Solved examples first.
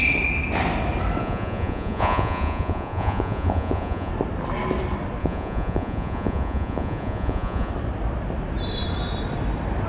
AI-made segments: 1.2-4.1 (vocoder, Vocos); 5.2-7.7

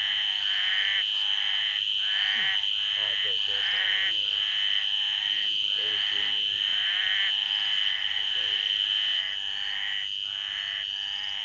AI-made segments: none

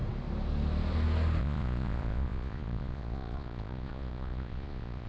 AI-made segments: 1.4-5.1 (vocoder, Vocos)

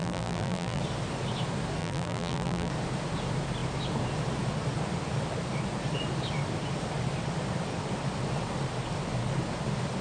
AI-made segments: 0.0-0.8 (vocoder, BigVGAN v2); 1.8-2.7

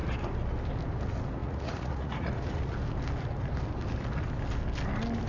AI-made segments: 1.4-2.6 (vocoder, Vocos)